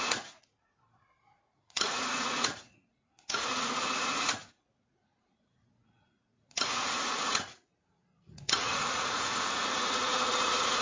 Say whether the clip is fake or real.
fake